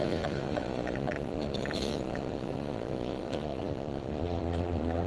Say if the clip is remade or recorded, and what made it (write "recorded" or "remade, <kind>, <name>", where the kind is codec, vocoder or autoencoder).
remade, vocoder, Vocos